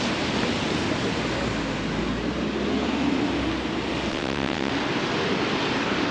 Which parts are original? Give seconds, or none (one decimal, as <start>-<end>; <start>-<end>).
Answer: 0.0-4.1; 4.7-6.1